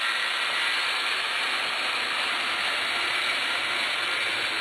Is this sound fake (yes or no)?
no